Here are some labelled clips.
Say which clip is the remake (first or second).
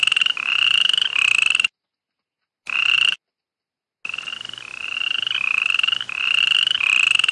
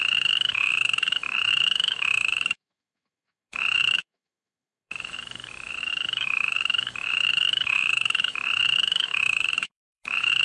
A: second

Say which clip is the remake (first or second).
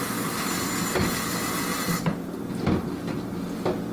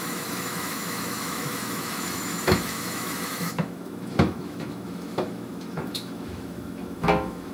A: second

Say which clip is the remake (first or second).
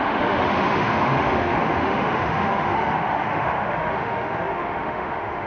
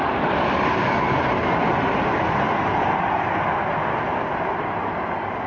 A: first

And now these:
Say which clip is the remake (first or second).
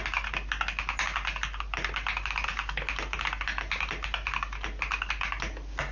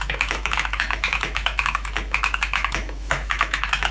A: second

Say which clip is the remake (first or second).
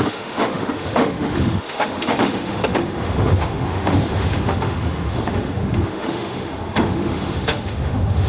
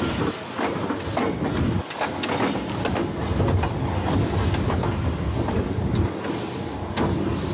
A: first